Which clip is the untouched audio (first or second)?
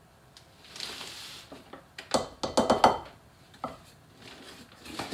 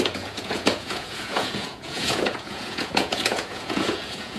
first